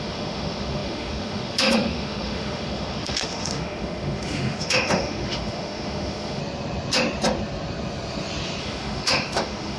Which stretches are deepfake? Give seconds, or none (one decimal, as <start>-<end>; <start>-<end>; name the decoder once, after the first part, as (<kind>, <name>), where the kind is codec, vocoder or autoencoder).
0.0-6.4 (autoencoder, DAC-VAE); 8.6-9.8